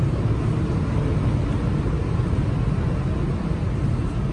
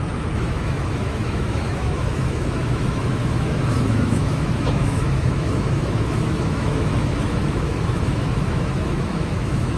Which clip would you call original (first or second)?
first